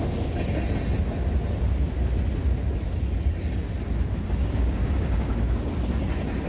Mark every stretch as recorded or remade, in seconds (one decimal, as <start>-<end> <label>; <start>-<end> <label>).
0.0-4.4 recorded; 4.4-5.7 remade; 5.7-6.5 recorded